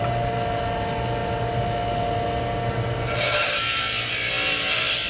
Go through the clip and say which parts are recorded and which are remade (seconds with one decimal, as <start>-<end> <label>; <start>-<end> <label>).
0.0-5.1 recorded